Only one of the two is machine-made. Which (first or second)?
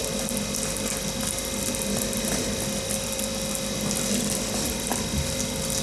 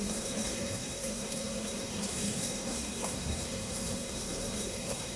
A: second